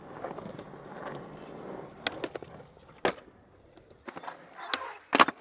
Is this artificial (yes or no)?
no